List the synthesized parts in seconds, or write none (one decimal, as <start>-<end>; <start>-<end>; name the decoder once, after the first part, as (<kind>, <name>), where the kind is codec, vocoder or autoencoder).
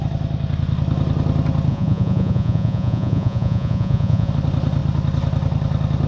1.7-4.3 (vocoder, Vocos)